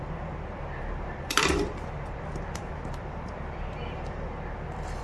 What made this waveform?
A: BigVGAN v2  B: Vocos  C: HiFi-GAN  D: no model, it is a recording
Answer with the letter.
A